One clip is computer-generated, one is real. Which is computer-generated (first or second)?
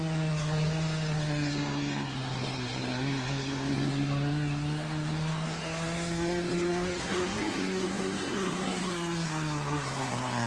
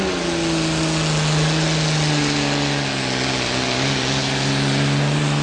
first